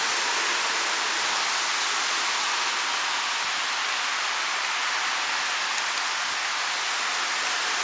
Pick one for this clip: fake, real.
real